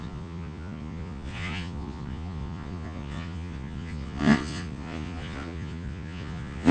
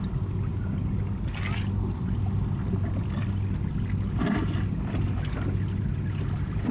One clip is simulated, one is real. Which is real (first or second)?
second